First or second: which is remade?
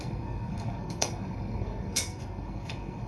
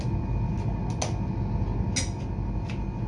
first